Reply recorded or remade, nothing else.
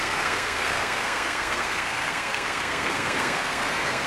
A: remade